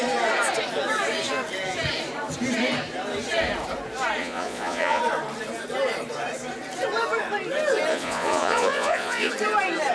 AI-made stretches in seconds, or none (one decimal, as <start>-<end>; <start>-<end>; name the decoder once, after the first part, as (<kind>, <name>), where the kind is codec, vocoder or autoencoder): 4.2-5.0 (vocoder, Vocos); 7.9-9.3